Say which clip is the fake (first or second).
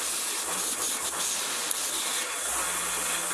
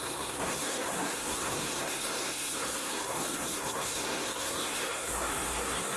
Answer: second